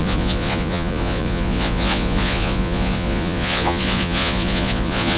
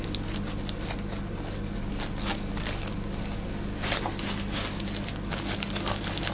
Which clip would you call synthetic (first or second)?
first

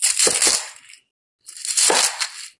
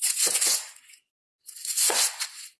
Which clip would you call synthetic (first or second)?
second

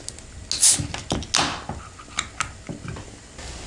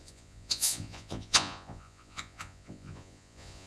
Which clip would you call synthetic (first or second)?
second